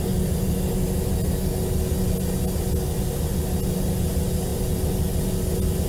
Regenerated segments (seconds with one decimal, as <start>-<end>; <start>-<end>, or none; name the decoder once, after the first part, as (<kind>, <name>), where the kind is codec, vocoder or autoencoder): none